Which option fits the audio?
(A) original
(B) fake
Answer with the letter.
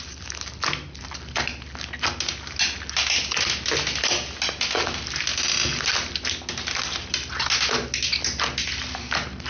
A